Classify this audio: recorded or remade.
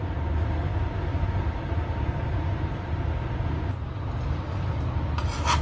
recorded